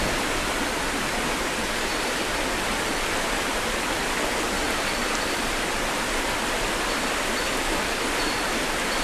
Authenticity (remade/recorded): recorded